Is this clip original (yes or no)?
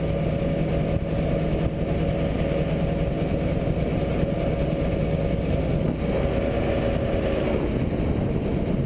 yes